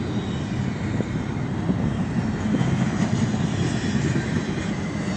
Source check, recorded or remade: recorded